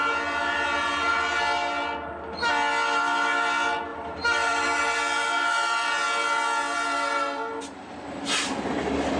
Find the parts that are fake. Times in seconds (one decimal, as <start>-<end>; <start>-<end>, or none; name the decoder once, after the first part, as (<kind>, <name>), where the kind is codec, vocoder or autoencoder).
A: 0.0-1.4 (vocoder, BigVGAN v2); 3.9-7.9